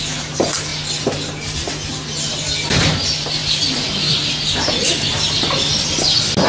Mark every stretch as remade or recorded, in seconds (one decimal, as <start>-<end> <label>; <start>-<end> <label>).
0.0-3.4 recorded; 3.4-5.9 remade; 5.9-6.5 recorded